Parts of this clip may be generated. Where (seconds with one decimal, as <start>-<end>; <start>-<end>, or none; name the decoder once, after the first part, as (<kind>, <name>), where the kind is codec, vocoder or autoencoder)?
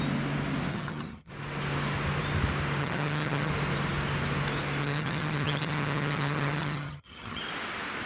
0.7-1.3 (vocoder, HiFi-GAN); 2.8-3.5; 4.8-7.4